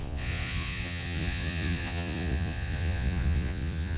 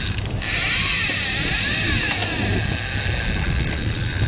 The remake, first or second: first